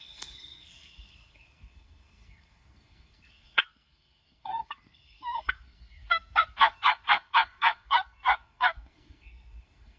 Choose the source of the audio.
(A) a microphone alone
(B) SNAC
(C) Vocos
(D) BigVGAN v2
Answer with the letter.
B